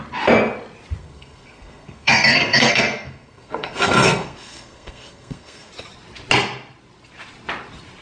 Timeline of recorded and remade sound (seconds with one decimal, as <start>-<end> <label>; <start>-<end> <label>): 0.0-1.0 recorded; 1.0-5.7 remade; 5.7-8.0 recorded